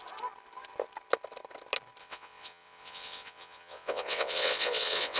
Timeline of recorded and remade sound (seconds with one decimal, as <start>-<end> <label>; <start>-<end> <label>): 0.0-2.0 recorded; 2.0-5.2 remade